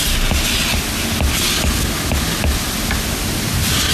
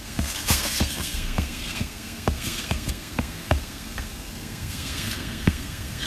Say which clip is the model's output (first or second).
second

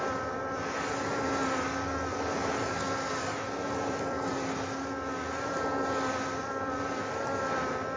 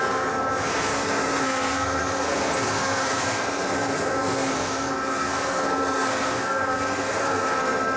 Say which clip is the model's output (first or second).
second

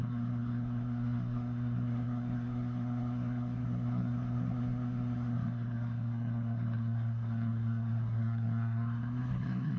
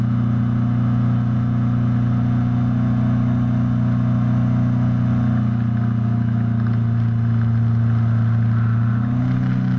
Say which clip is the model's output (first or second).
first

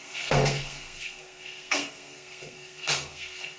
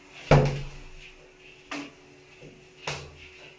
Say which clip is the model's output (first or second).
first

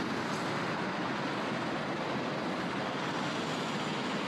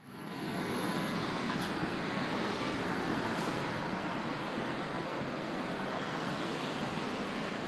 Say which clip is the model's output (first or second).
second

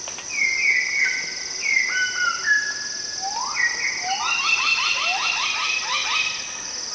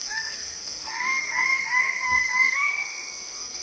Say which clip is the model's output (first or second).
second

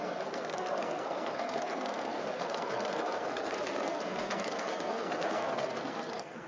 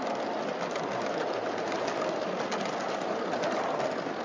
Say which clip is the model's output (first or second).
first